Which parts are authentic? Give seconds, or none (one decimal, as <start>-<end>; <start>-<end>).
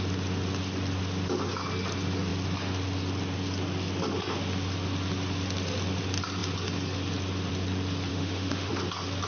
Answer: 0.0-8.1; 8.7-9.3